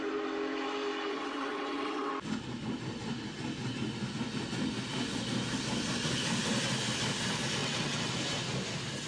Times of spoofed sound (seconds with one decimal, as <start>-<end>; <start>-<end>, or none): 1.1-2.1; 7.6-8.1